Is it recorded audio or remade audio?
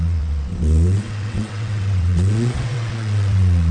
remade